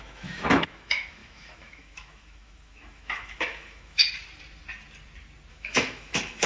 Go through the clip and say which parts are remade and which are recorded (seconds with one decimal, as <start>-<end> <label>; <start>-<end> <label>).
0.0-4.0 remade; 4.0-5.5 recorded; 5.5-6.5 remade